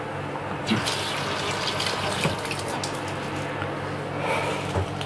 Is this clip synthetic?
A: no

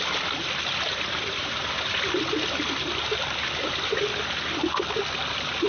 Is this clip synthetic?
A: no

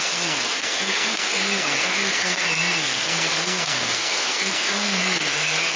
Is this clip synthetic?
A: yes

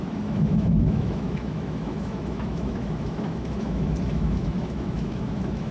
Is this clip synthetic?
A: yes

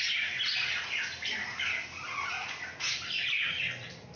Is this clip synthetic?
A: no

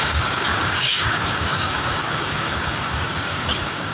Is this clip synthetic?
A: yes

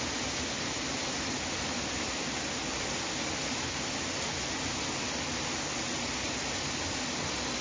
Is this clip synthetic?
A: no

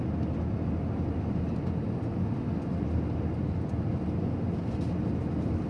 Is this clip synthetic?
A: no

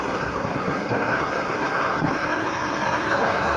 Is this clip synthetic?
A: yes